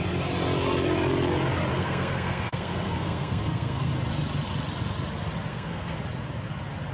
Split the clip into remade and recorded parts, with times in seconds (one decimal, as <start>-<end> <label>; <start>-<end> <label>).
0.0-1.7 recorded; 1.7-3.9 remade; 3.9-5.5 recorded; 5.5-6.0 remade; 6.0-6.9 recorded